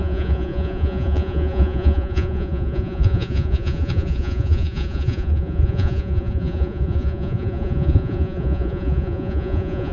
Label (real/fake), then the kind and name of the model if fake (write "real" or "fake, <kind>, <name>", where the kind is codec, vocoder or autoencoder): fake, vocoder, Vocos